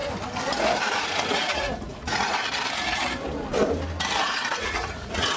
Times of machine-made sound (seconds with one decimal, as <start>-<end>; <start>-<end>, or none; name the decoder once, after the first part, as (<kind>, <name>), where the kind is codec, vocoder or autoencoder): 1.0-2.4 (vocoder, Vocos); 4.2-5.4